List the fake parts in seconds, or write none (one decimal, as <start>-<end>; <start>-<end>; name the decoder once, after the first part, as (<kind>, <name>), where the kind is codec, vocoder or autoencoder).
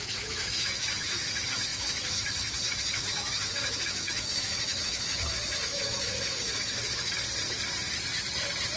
0.0-7.1 (autoencoder, DAC-VAE)